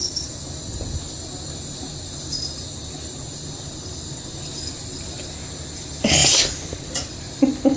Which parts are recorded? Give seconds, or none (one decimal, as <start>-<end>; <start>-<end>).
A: 0.0-7.8